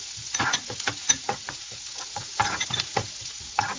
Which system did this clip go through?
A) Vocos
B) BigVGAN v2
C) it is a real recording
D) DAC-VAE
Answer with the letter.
A